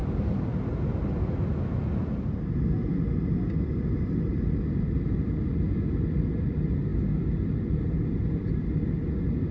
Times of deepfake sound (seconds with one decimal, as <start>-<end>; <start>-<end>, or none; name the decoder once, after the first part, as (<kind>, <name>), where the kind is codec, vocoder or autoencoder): none